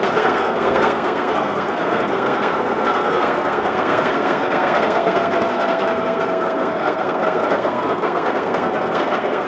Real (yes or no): no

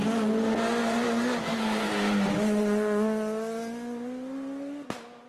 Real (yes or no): yes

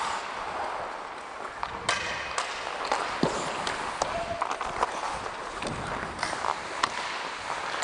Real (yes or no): yes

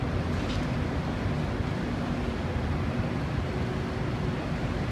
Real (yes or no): yes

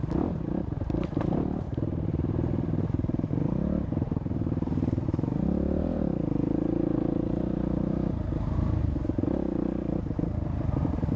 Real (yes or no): no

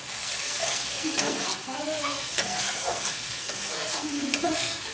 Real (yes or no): no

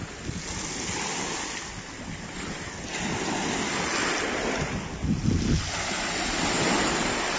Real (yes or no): yes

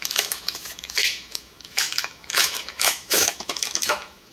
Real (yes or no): no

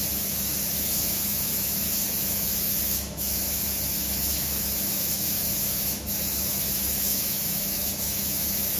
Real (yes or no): no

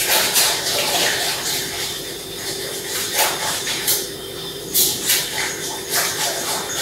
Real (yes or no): no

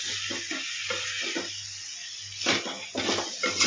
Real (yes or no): yes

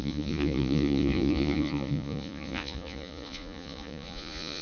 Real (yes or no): no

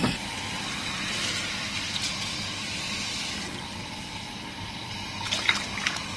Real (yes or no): yes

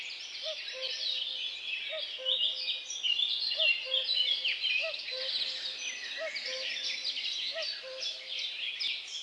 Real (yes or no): yes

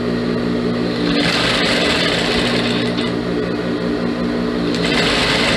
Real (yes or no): yes